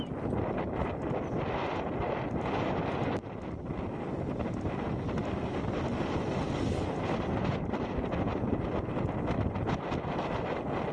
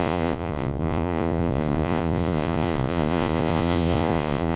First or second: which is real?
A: first